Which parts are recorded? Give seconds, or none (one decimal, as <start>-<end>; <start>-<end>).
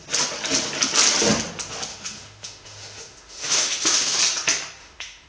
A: 0.0-1.9; 4.2-4.8